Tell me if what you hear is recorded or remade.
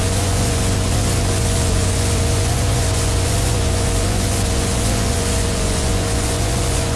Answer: remade